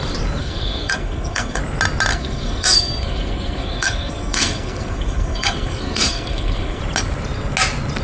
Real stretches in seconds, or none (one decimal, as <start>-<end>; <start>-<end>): 0.0-0.4; 1.6-2.1; 6.8-8.0